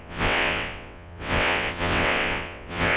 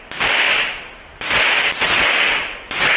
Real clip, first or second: second